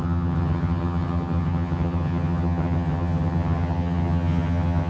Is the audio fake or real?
fake